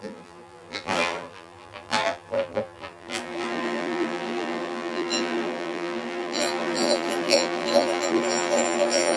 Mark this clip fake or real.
fake